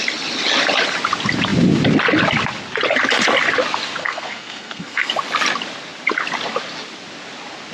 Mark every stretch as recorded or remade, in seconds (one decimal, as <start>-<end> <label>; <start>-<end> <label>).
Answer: 0.0-4.0 recorded; 4.0-5.1 remade; 5.1-7.7 recorded